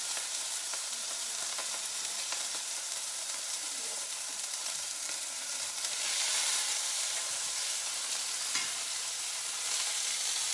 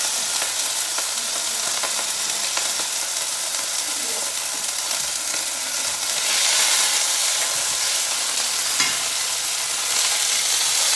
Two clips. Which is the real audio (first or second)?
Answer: second